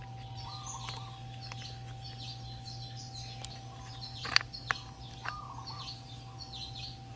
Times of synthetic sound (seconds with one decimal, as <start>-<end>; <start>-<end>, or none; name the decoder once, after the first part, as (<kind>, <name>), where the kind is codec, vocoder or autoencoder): none